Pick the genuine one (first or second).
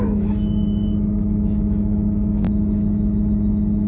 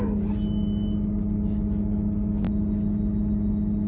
second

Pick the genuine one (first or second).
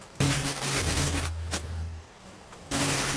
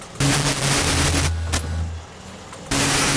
second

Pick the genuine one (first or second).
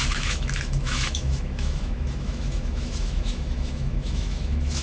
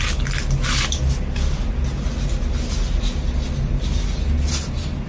second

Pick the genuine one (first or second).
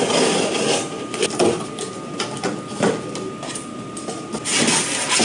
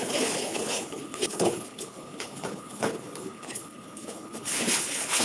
first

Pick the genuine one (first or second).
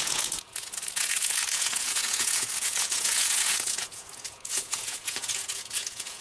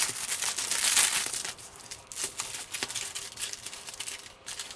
second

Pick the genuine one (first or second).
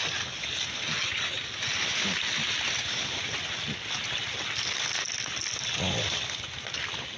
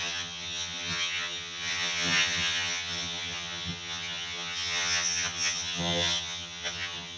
first